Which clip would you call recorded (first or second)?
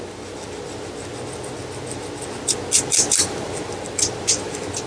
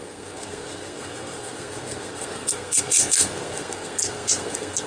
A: first